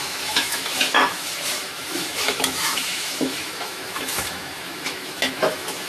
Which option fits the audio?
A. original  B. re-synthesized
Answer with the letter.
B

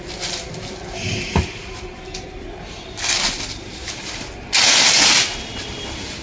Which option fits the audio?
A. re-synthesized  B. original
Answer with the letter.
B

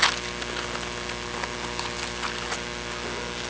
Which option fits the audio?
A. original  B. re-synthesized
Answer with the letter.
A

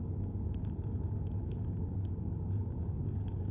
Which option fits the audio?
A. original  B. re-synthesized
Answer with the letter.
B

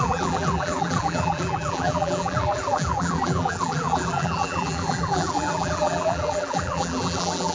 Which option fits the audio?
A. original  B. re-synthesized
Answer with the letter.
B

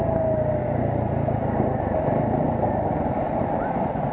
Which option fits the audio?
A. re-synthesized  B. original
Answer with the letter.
B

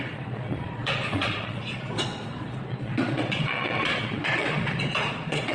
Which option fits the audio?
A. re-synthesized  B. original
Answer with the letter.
A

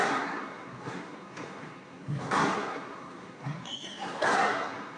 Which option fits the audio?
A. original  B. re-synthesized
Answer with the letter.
B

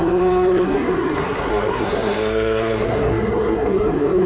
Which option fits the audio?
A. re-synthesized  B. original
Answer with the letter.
A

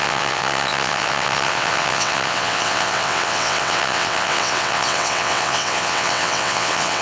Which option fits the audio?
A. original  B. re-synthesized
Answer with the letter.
B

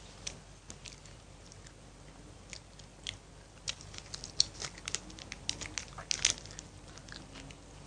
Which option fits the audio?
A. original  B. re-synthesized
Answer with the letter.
A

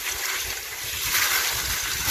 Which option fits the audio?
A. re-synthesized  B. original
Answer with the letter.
B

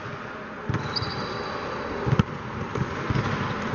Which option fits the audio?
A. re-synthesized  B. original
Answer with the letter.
B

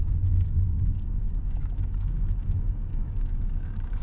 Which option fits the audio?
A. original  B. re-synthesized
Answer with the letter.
B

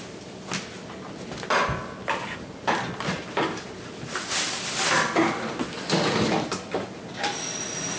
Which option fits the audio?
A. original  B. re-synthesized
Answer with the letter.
A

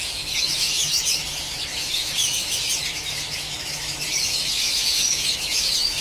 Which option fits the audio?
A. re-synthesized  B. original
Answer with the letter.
A